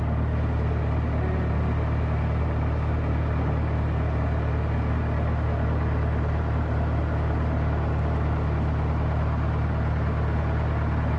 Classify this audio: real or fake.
real